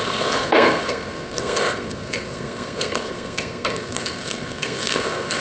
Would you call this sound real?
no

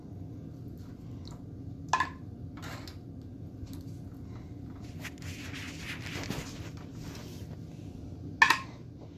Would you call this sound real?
yes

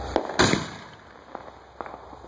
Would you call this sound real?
yes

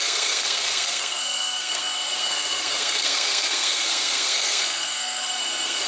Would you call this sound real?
no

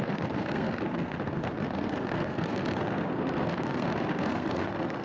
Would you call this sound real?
no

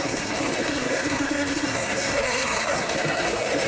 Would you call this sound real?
no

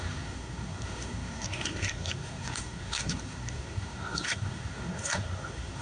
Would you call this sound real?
no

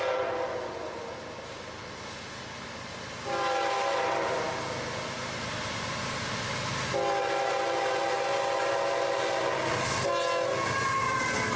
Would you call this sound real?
yes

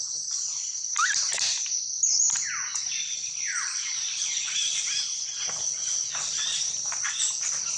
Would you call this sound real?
yes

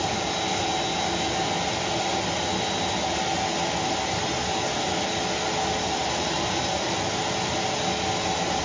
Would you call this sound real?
yes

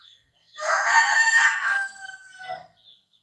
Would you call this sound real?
no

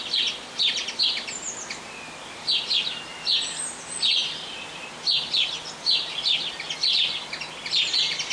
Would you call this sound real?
yes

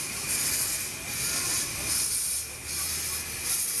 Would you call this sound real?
yes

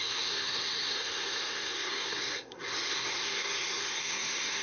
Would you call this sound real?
no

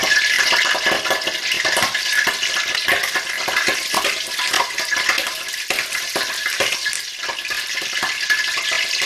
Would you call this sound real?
yes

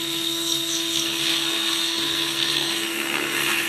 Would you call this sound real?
no